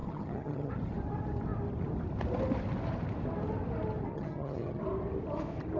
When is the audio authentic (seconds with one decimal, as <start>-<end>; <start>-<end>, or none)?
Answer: 0.7-4.1; 4.8-5.8